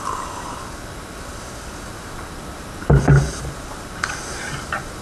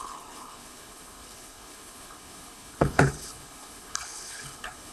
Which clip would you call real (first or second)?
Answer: first